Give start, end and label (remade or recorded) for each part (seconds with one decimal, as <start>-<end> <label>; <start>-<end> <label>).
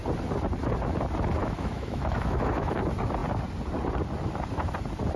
0.0-1.4 recorded; 1.4-2.7 remade; 2.7-5.2 recorded